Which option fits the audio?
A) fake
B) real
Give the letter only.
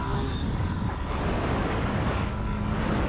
A